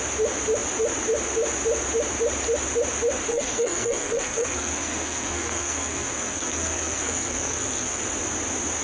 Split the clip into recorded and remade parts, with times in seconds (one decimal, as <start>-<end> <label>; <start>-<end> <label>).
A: 0.0-3.3 recorded; 3.3-8.0 remade; 8.0-8.8 recorded